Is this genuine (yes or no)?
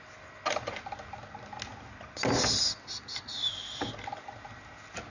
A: yes